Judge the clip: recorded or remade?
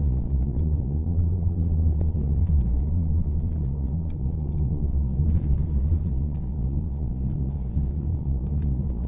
remade